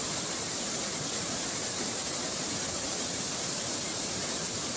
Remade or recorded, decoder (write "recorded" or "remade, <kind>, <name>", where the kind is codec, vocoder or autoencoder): remade, vocoder, BigVGAN v2